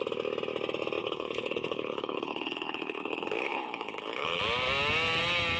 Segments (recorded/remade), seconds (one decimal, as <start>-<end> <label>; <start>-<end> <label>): 0.0-1.0 recorded; 1.0-4.4 remade; 4.4-5.6 recorded